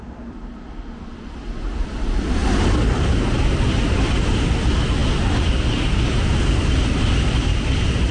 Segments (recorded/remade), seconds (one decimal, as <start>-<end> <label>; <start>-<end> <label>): 0.0-8.1 recorded